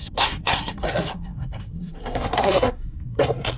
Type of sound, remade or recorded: remade